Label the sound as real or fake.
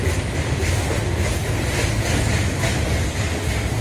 real